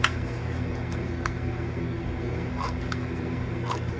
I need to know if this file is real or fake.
fake